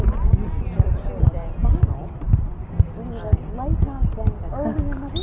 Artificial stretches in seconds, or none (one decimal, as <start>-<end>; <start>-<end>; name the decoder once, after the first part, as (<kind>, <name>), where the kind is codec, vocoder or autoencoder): none